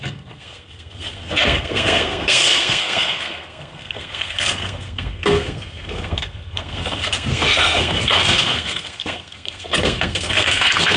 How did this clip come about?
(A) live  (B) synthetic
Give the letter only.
B